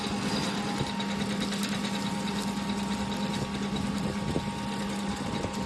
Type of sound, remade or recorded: recorded